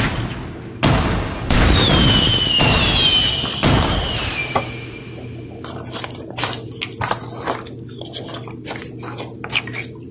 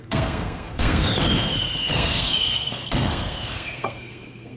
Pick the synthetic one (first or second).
second